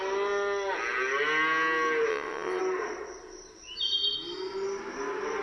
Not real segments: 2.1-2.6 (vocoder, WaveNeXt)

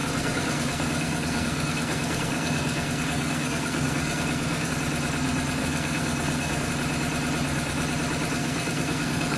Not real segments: 0.0-4.7 (codec, SNAC); 5.6-6.7; 8.4-9.4

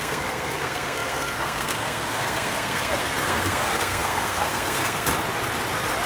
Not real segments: 0.0-5.1 (codec, SNAC)

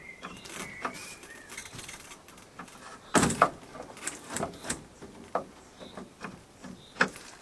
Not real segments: 0.0-1.6 (vocoder, BigVGAN v2); 2.6-7.4

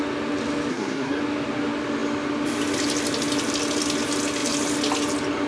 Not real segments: 0.7-1.2 (codec, SNAC)

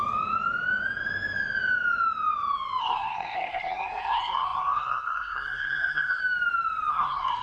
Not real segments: 2.8-6.2 (codec, SNAC); 6.9-7.4